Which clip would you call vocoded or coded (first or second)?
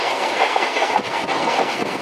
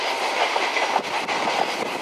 first